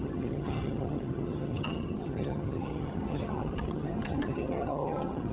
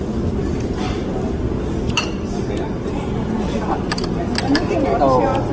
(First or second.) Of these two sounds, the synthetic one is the first